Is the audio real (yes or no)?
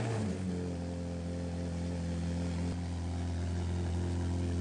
yes